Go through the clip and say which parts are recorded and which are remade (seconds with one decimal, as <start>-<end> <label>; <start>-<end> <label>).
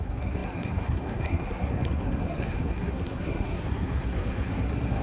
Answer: 0.0-5.0 remade